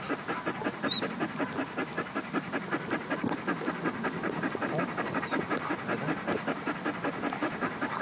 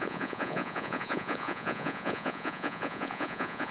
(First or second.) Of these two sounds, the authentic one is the first